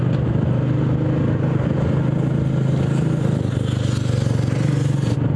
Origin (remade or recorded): recorded